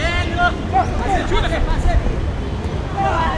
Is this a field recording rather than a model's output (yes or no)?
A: yes